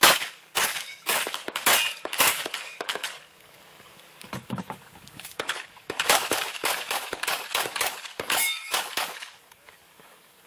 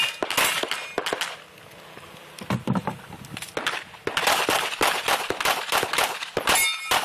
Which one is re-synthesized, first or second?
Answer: first